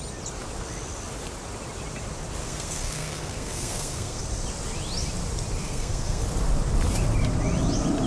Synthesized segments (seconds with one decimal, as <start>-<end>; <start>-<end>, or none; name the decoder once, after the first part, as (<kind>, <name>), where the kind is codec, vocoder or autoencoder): 2.4-4.2 (codec, SNAC); 5.6-6.2